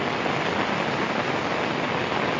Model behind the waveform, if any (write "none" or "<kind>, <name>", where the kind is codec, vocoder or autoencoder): none